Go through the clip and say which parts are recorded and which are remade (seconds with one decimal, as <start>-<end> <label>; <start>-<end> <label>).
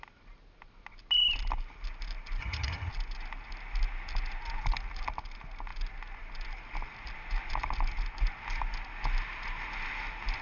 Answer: 0.0-2.4 recorded; 2.4-2.9 remade; 2.9-10.4 recorded